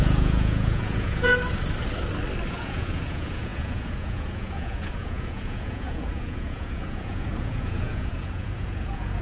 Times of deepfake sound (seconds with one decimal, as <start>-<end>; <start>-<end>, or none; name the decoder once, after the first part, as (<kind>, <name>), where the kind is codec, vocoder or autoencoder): 0.0-1.3 (vocoder, Vocos); 2.5-9.2

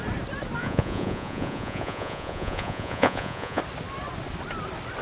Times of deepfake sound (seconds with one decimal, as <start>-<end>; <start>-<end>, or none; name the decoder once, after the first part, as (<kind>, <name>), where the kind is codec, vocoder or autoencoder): 0.6-3.6 (vocoder, Vocos)

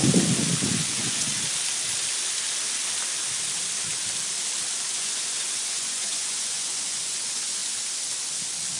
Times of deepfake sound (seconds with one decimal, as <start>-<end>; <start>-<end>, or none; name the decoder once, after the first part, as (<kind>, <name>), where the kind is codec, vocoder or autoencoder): 0.7-1.3 (vocoder, Vocos); 4.9-7.6

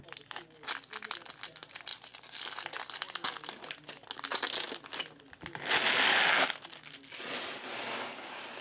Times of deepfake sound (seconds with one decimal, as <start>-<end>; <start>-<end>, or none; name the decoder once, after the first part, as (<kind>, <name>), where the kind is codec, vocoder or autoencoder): none

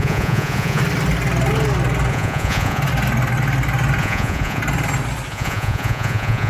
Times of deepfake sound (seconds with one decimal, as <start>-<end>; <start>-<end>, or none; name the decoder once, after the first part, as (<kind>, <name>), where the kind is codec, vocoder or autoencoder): 0.0-0.8 (vocoder, Vocos); 2.1-2.8; 4.0-4.6; 5.3-6.5